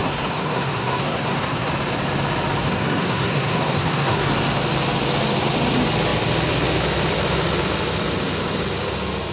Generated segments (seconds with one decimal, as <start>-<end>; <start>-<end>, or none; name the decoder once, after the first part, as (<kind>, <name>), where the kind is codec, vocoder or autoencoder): 0.0-1.7 (codec, SNAC); 2.6-4.3